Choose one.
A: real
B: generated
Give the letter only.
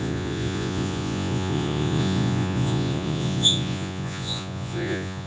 B